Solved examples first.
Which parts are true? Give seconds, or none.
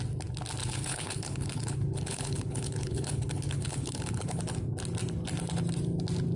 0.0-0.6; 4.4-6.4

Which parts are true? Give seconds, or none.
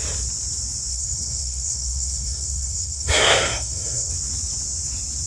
0.0-0.9; 4.1-5.3